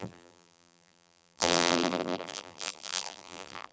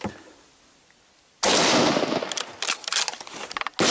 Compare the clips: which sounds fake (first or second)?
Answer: first